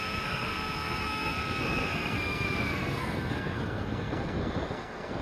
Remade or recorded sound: remade